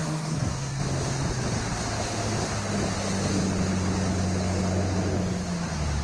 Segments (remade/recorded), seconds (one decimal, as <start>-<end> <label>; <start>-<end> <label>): 0.0-0.8 remade; 0.8-6.0 recorded